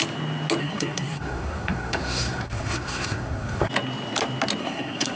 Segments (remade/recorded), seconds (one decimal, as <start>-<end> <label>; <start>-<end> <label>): 0.0-0.6 recorded; 0.6-3.7 remade; 3.7-4.6 recorded; 4.6-5.2 remade